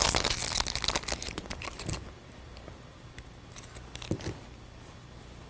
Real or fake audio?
real